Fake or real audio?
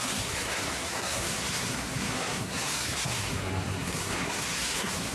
fake